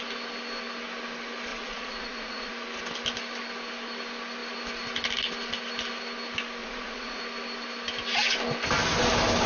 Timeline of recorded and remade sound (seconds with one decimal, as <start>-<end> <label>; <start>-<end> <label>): 0.0-1.5 recorded; 1.5-2.5 remade; 2.5-6.6 recorded; 6.6-7.2 remade; 7.2-9.5 recorded